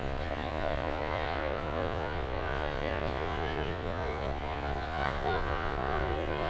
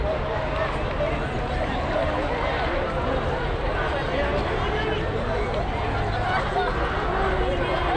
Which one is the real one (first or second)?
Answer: second